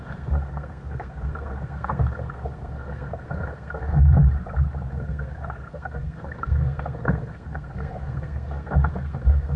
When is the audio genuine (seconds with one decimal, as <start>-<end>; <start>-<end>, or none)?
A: 4.2-4.9